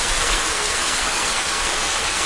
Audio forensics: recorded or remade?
remade